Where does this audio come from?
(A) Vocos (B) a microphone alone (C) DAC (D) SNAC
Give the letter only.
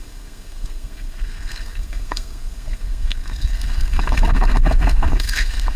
D